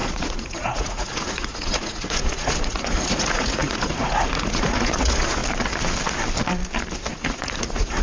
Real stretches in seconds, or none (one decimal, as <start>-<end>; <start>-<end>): 5.4-7.1